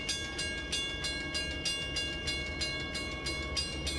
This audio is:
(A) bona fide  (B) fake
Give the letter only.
A